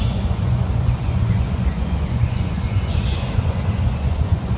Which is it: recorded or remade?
remade